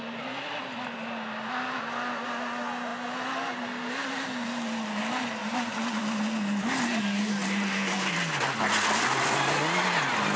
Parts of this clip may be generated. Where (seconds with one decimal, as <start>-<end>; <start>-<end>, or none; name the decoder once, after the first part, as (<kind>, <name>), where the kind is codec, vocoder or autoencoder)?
5.4-6.0 (vocoder, BigVGAN v2)